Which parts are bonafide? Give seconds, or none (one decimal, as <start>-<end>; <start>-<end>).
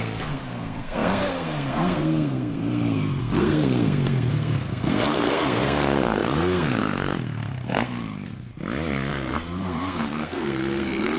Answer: 8.5-9.1